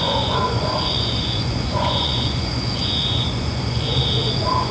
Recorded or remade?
remade